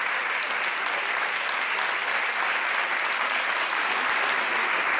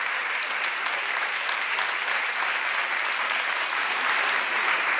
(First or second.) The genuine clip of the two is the first